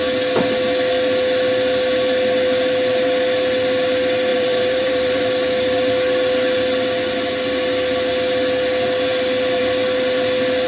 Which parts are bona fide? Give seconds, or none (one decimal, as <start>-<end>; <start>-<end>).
0.0-4.3; 5.2-10.7